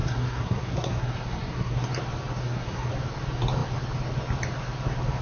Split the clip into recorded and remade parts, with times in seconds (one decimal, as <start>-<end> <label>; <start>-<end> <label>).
0.0-1.9 remade; 1.9-2.4 recorded; 2.4-2.9 remade; 2.9-5.2 recorded